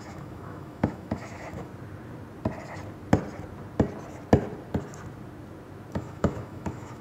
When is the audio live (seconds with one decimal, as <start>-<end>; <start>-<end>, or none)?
1.7-5.9